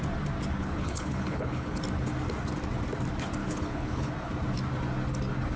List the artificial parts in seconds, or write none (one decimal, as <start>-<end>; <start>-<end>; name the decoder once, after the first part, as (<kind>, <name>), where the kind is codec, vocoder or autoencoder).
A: 0.6-1.8 (codec, HILCodec); 3.4-4.1

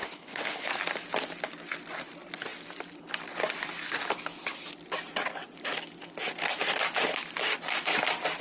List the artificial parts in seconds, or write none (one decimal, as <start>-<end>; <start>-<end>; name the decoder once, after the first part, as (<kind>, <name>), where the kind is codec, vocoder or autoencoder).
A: 0.0-0.7 (codec, HILCodec)

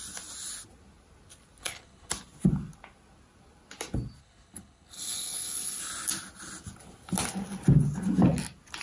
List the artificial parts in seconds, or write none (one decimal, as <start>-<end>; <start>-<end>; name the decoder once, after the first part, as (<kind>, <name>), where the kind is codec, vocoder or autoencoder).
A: 1.6-2.1 (codec, HILCodec); 4.2-5.8

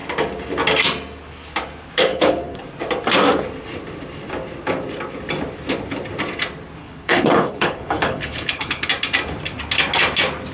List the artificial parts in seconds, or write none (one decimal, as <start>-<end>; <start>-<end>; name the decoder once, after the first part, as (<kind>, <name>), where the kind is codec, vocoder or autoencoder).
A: 2.1-2.6 (codec, HILCodec); 6.8-8.9

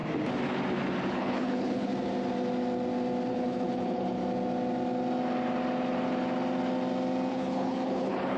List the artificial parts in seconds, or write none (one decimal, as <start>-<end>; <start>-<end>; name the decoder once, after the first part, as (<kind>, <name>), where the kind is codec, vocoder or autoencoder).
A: 1.1-1.9 (codec, HILCodec); 3.3-4.2; 7.3-8.4

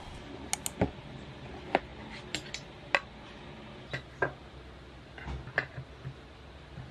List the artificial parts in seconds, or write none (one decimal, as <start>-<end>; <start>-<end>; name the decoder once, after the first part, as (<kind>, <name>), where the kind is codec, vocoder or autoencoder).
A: none

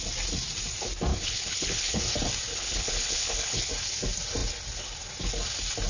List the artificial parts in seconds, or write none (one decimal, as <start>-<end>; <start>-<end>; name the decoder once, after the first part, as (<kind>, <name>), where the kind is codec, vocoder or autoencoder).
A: 1.1-2.0 (codec, HILCodec); 2.5-3.7

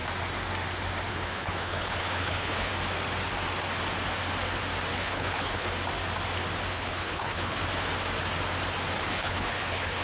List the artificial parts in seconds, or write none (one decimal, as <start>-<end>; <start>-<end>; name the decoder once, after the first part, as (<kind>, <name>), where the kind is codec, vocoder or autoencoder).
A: 1.1-2.7 (codec, HILCodec); 4.9-5.7; 6.7-7.6; 9.0-10.0